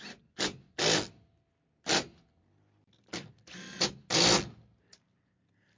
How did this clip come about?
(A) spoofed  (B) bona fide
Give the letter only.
B